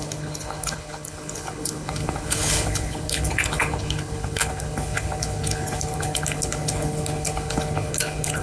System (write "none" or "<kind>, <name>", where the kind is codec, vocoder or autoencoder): codec, HILCodec